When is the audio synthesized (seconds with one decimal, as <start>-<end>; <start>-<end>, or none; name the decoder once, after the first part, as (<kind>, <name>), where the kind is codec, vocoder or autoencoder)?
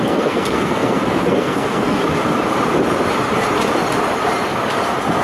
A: 0.0-2.0 (codec, SNAC)